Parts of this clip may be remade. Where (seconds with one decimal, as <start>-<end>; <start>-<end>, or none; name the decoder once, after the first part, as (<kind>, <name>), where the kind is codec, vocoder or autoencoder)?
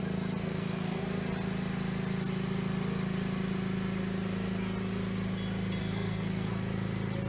0.4-1.0 (codec, SNAC); 5.8-6.5